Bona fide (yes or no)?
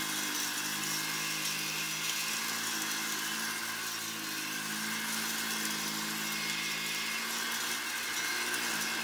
yes